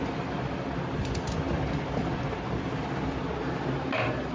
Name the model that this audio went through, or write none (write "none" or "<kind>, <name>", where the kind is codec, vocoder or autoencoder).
vocoder, BigVGAN v2